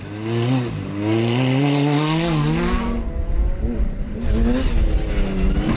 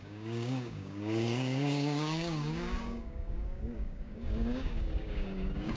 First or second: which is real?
first